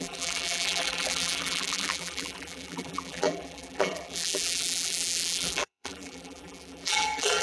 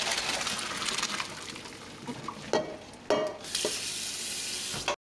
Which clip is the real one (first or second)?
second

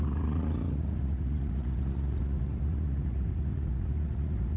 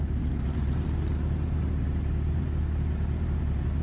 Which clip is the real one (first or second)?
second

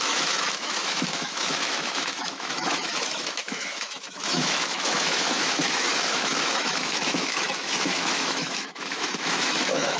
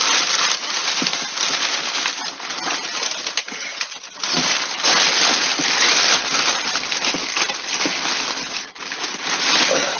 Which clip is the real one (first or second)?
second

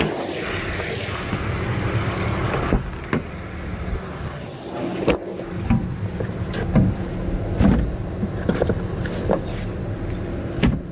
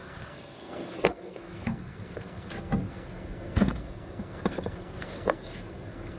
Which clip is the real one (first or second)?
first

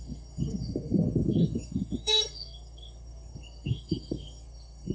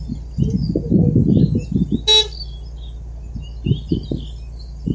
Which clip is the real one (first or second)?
second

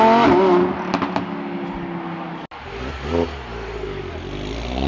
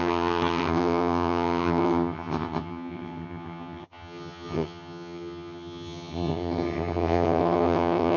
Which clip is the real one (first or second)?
first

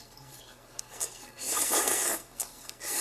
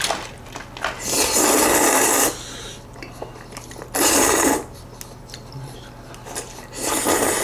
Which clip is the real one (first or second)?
second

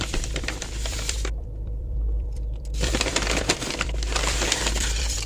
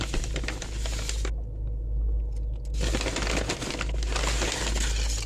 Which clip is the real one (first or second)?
second